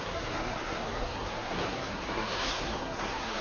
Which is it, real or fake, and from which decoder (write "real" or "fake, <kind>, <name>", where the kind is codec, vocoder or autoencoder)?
fake, codec, SNAC